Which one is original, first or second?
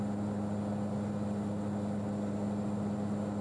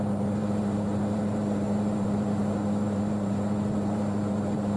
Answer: first